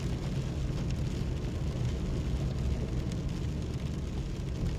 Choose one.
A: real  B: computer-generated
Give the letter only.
A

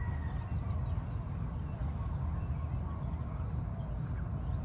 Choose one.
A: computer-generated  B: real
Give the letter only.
B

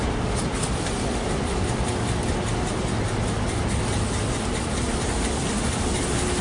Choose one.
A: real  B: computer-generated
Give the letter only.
A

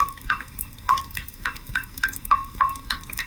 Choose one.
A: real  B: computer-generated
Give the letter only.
B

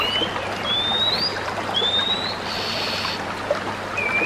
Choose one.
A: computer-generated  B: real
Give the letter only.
B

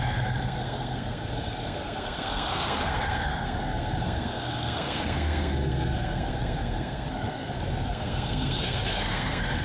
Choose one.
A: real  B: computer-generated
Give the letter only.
B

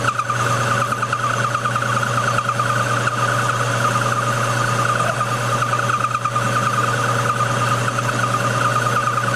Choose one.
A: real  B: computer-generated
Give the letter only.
A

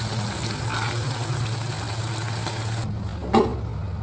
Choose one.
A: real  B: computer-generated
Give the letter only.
A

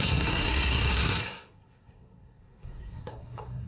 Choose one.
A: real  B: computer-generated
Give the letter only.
B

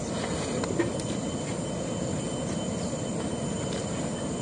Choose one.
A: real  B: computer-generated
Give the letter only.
A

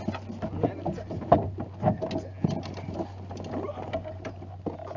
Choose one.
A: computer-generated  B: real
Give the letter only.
B